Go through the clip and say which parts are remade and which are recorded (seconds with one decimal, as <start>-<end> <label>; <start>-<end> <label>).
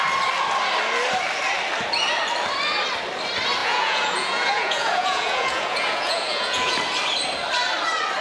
0.0-3.6 recorded; 3.6-6.7 remade; 6.7-8.2 recorded